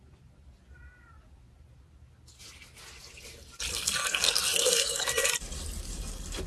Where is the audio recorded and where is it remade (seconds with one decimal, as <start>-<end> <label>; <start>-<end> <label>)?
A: 0.0-3.7 recorded; 3.7-5.3 remade; 5.3-6.5 recorded